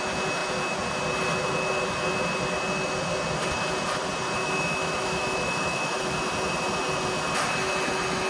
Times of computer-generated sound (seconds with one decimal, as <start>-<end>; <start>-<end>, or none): 4.4-6.0